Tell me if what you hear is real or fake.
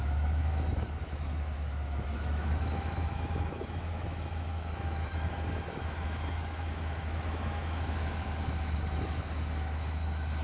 fake